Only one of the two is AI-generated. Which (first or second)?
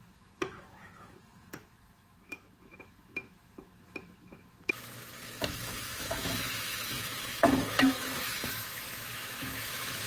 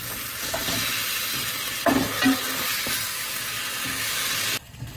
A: first